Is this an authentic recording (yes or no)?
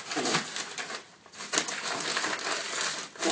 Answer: yes